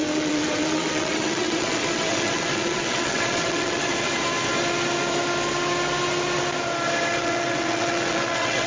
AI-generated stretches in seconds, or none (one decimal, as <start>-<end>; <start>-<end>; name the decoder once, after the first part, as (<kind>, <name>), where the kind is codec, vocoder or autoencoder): 0.0-3.9 (vocoder, WaveNeXt); 7.1-8.7